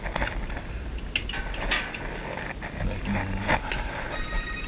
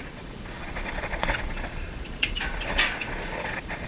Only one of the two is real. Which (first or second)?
first